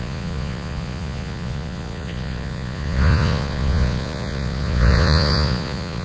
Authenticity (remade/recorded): remade